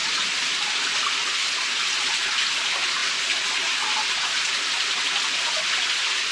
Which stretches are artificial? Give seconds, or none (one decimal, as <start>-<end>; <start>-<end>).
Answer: none